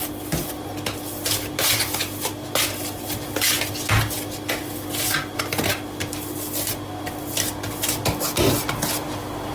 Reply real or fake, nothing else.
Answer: real